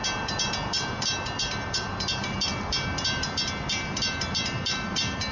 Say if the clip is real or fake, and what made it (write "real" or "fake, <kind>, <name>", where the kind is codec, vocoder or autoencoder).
fake, vocoder, BigVGAN v2